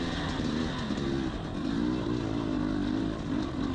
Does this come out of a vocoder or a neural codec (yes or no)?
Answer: no